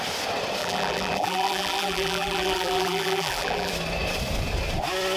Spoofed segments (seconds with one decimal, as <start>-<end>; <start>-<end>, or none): 0.6-3.7